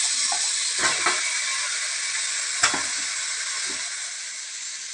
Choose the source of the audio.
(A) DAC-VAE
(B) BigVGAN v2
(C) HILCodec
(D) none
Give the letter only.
D